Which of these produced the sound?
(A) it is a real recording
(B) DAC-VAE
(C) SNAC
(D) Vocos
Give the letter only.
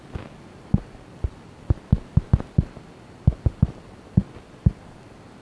A